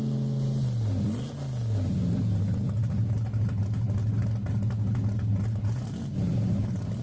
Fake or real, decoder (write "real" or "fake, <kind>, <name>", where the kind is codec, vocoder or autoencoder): real